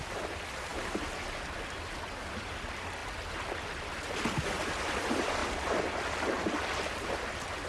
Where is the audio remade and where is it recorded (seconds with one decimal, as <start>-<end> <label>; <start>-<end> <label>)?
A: 0.0-7.7 recorded